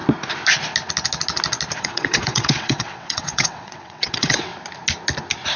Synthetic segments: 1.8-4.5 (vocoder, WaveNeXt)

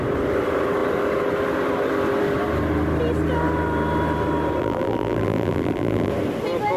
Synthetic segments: 4.6-6.1 (vocoder, BigVGAN v2)

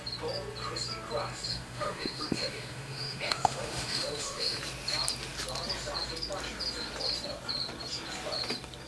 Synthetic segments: 1.5-4.6 (autoencoder, DAC-VAE)